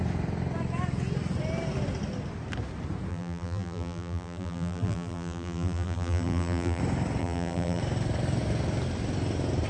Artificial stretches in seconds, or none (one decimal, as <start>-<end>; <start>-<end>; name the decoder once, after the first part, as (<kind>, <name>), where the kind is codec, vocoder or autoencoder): 3.1-6.8 (vocoder, BigVGAN v2); 7.2-7.8